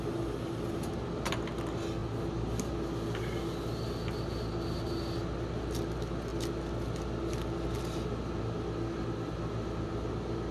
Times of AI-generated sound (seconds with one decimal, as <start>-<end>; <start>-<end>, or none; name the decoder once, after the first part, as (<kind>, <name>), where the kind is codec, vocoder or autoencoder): none